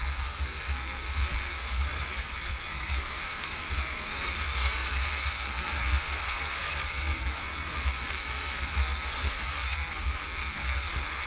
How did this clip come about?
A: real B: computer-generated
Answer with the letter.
B